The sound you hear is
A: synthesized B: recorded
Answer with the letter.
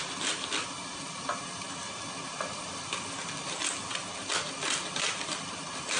B